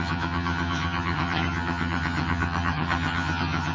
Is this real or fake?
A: fake